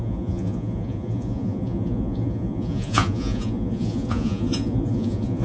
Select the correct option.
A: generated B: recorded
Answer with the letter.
A